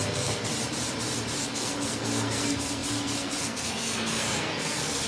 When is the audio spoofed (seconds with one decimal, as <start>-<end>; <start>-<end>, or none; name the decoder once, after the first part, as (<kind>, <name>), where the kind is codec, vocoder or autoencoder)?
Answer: 0.0-0.5 (codec, SNAC); 1.4-5.1